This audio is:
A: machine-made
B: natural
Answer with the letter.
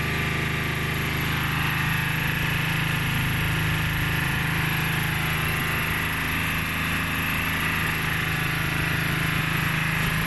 B